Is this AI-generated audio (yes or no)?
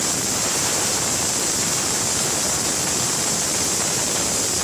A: no